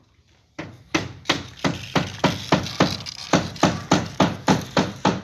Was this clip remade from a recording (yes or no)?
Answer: no